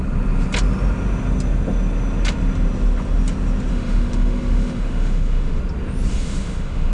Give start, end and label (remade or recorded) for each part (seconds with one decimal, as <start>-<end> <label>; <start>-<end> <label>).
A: 0.0-3.7 recorded; 3.7-5.6 remade; 5.6-6.1 recorded; 6.1-6.9 remade